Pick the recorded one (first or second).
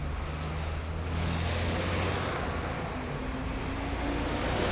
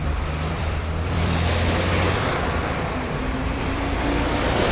first